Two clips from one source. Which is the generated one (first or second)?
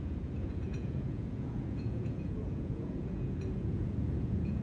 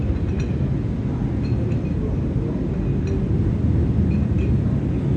first